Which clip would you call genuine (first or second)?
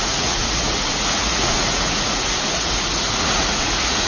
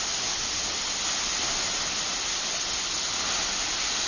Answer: second